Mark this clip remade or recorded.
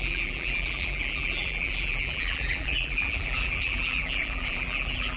remade